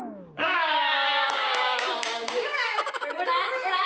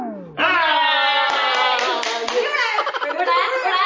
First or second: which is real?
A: second